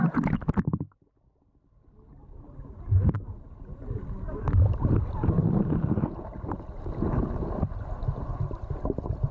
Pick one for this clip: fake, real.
real